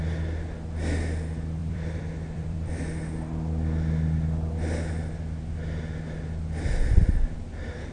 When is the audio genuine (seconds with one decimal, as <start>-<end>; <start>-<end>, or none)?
0.0-1.6; 2.8-7.9